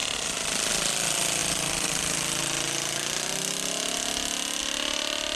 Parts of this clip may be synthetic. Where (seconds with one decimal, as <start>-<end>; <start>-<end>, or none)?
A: none